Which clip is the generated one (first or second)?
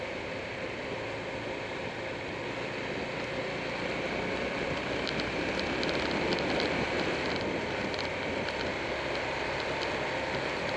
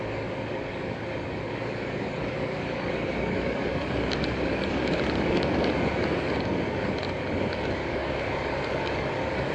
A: second